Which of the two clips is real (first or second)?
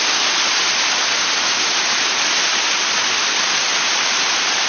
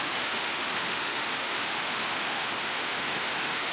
first